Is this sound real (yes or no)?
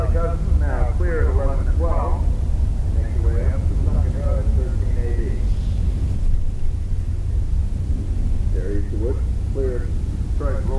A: yes